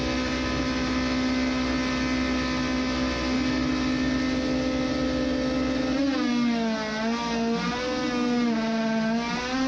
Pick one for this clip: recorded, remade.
recorded